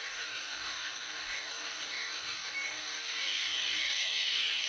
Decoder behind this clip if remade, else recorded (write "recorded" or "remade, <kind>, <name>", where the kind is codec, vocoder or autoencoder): remade, codec, DAC